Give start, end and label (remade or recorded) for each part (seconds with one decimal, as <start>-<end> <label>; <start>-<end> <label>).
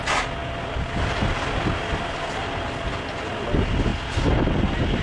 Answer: 0.0-5.0 recorded